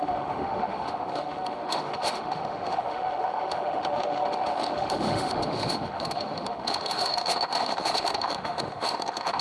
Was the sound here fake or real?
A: fake